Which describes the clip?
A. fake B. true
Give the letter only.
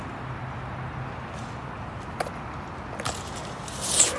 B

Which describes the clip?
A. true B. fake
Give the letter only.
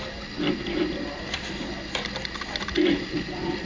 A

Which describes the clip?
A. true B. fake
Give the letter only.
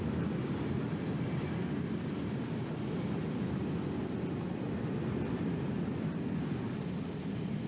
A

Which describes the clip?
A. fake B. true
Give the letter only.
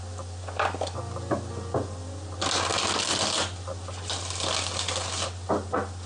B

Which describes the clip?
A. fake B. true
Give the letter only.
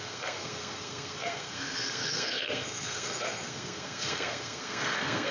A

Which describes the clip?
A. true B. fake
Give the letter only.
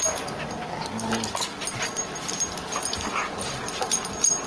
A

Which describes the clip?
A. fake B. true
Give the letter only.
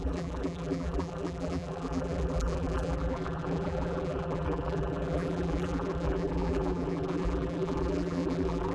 A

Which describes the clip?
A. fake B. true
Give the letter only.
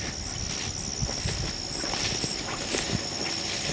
B